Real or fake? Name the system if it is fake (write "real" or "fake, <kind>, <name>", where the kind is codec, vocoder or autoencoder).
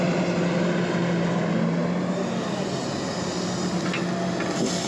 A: real